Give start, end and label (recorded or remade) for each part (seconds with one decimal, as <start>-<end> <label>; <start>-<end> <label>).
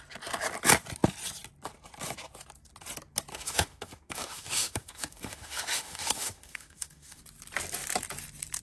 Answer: 0.0-3.3 recorded; 3.3-7.2 remade; 7.2-8.6 recorded